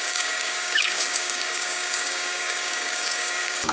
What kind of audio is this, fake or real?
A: fake